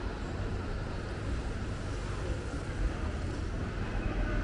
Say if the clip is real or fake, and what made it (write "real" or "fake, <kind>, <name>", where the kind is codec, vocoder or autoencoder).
real